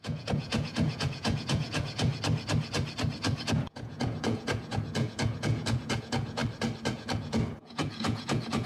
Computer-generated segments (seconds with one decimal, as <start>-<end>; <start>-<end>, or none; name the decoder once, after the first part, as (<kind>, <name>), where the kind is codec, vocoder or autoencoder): 0.0-2.1 (vocoder, Vocos); 3.4-6.4; 6.9-8.7